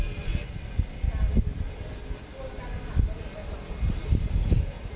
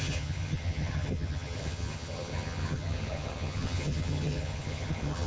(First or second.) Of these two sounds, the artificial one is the second